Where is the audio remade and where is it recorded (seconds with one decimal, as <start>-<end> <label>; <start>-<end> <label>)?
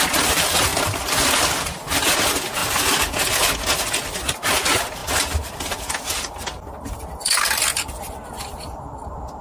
0.0-2.6 remade; 2.6-4.5 recorded; 4.5-5.0 remade; 5.0-5.7 recorded; 5.7-9.4 remade